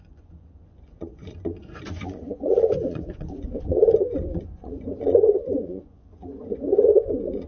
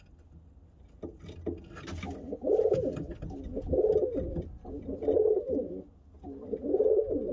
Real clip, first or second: second